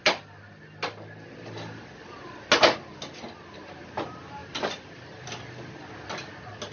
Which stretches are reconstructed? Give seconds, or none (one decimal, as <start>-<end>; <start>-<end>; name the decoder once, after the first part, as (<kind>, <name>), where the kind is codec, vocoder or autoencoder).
4.4-5.4 (vocoder, BigVGAN v2)